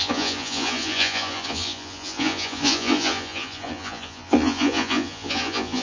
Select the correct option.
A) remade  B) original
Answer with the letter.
A